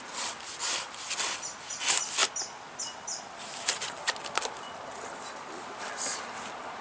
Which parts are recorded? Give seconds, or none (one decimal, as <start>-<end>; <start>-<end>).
0.0-6.8